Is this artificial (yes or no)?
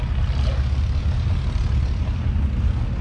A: no